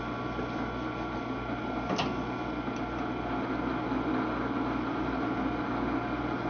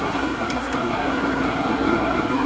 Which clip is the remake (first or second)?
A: second